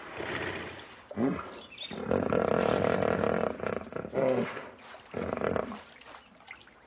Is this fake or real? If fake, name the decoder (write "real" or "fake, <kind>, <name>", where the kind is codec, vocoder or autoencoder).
real